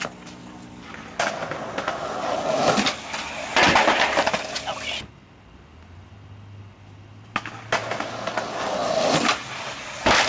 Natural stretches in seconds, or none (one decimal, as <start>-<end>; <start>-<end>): 0.0-0.4; 1.3-10.3

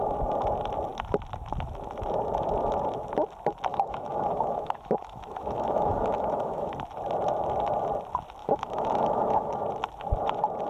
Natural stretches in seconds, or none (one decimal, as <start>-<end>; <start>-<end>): 0.0-3.7; 6.7-8.4; 9.6-10.7

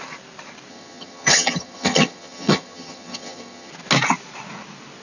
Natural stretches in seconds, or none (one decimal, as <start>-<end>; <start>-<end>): 0.0-0.7; 3.7-5.0

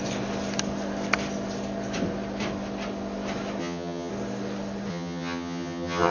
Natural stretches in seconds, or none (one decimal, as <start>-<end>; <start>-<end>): 0.0-3.6; 4.1-4.9

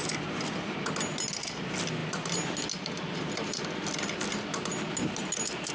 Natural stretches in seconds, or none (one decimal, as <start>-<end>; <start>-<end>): 0.0-5.7

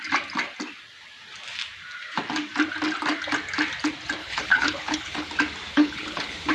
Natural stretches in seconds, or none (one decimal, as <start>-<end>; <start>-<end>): 0.0-4.2; 5.3-5.7

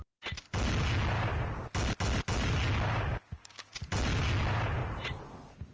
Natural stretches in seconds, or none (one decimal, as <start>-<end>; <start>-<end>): 0.0-3.1; 3.7-5.7